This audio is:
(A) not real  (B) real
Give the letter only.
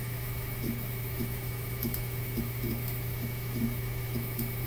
A